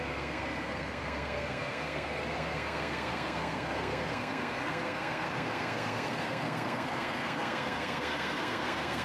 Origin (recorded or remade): remade